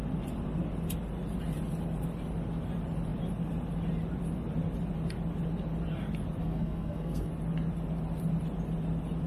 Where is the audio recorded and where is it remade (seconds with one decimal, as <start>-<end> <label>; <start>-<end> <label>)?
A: 0.0-6.4 recorded; 6.4-7.3 remade; 7.3-9.3 recorded